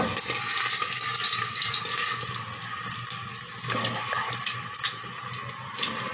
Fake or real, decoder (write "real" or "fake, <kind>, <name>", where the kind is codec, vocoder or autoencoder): real